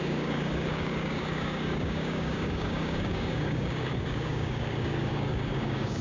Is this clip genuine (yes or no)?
no